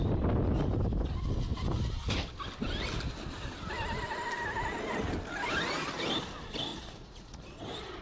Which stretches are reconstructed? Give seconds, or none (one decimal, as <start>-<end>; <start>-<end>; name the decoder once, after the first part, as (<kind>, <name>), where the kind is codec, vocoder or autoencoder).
6.7-7.4 (vocoder, Vocos)